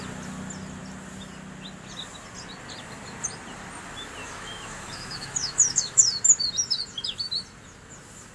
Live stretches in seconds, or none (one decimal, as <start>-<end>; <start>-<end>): 0.0-4.2; 6.0-8.3